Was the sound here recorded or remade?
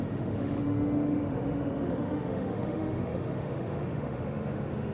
remade